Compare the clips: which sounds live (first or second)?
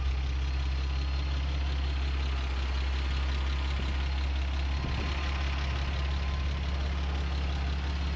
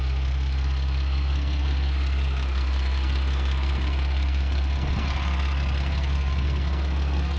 first